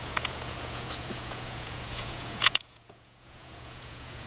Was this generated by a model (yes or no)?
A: yes